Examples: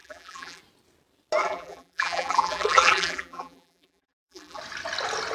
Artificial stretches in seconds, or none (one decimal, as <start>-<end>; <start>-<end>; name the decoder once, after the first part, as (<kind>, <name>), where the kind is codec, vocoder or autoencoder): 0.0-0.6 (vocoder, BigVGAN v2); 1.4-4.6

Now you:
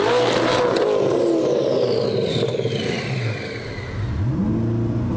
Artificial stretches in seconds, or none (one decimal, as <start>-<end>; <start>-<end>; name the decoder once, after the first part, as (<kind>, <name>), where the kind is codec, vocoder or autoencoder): none

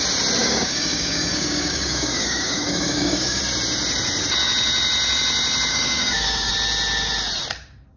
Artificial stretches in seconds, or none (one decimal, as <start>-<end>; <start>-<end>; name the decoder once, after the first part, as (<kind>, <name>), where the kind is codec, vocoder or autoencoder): 0.4-3.4 (codec, DAC); 5.7-6.5

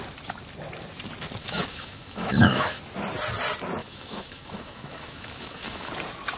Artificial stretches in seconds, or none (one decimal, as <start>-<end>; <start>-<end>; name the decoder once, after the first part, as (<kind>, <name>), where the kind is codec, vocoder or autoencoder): 1.4-2.8 (autoencoder, DAC-VAE); 3.8-5.9

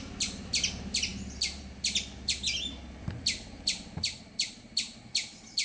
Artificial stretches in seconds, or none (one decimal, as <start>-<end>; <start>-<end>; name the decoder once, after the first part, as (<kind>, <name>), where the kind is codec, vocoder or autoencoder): none

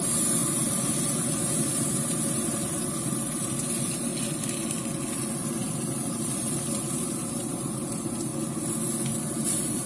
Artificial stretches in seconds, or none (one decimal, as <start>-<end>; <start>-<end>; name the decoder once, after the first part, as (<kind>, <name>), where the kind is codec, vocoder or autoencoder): 0.0-4.1 (vocoder, BigVGAN v2); 5.3-8.3; 9.2-9.9